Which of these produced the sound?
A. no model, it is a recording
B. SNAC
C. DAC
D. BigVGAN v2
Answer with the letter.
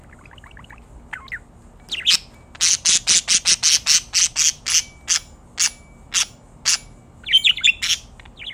A